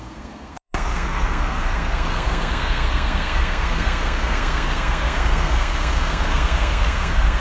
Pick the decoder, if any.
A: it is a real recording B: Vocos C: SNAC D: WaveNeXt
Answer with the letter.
C